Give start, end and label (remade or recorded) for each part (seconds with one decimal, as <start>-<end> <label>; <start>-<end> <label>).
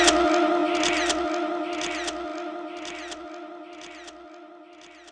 0.0-5.1 recorded